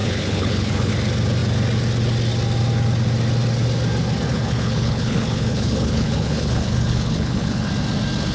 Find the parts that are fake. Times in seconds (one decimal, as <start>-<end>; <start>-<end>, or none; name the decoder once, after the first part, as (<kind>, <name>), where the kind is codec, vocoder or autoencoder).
0.0-0.9 (codec, HILCodec); 4.3-7.7